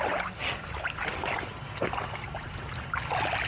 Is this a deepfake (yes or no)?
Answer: no